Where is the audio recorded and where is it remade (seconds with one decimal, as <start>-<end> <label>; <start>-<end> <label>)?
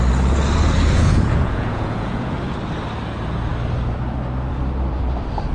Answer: 0.0-0.8 recorded; 0.8-2.4 remade; 2.4-5.5 recorded